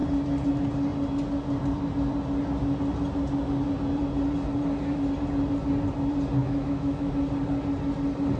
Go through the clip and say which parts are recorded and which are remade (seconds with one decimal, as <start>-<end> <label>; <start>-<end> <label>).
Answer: 0.0-6.4 recorded; 6.4-7.1 remade; 7.1-8.4 recorded